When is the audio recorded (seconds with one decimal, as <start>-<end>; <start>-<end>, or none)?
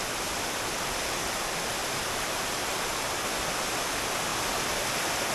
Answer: 0.0-1.8; 3.2-5.3